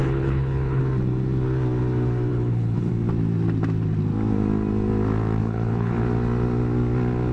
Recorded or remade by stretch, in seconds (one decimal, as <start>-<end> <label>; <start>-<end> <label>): 0.0-0.8 remade; 0.8-2.3 recorded; 2.3-2.9 remade; 2.9-5.4 recorded; 5.4-5.9 remade; 5.9-7.3 recorded